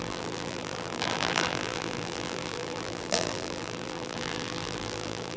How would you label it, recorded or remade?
remade